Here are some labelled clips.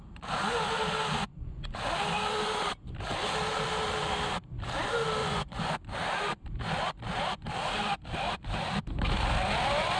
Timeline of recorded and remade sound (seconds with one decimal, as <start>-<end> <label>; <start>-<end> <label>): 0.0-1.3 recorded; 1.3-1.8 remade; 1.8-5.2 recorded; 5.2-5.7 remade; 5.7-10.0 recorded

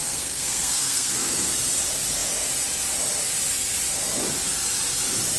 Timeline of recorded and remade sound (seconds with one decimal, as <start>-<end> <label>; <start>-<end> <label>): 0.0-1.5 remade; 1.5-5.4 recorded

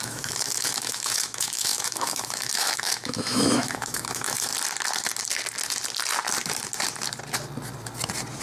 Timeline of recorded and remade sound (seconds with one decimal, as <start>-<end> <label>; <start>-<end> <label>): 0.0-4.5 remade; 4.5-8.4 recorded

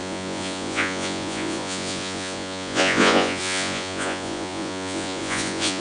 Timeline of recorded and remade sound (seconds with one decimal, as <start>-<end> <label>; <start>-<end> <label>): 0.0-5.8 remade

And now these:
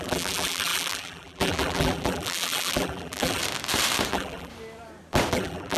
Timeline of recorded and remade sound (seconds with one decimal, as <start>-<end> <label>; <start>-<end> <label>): 0.0-3.4 remade; 3.4-4.1 recorded; 4.1-4.5 remade; 4.5-5.3 recorded; 5.3-5.8 remade

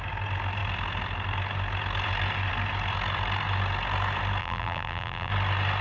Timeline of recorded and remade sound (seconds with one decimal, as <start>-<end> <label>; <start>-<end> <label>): 0.0-4.4 recorded; 4.4-5.3 remade; 5.3-5.8 recorded